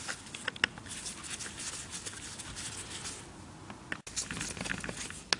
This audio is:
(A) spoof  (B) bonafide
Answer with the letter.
B